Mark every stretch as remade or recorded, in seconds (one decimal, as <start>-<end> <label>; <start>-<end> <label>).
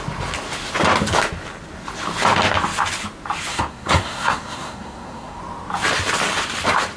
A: 0.0-3.5 recorded; 3.5-5.4 remade; 5.4-7.0 recorded